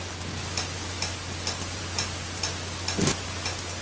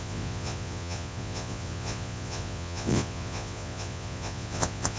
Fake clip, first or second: second